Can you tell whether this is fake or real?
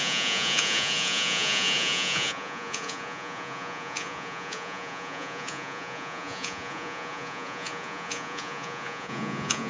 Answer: fake